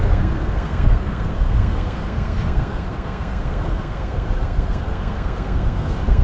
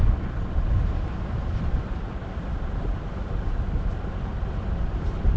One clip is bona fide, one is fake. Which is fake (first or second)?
first